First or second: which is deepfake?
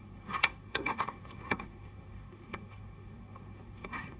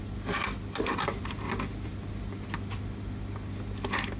first